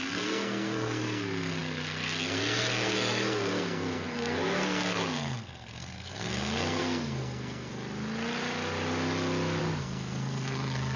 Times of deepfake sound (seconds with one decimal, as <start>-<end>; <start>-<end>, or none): 0.0-7.7; 9.6-11.0